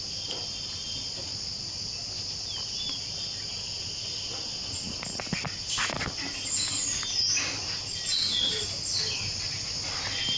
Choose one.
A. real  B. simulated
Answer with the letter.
A